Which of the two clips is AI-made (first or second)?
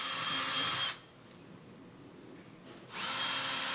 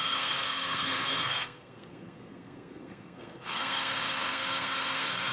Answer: second